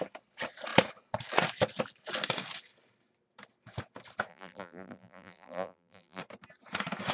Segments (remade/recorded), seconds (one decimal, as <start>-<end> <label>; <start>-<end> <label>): 0.0-4.3 recorded; 4.3-6.2 remade; 6.2-7.1 recorded